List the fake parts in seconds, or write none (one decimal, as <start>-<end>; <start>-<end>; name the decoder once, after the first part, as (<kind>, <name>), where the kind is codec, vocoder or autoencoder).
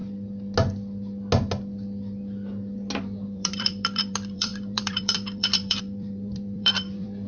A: 3.0-7.3 (vocoder, BigVGAN v2)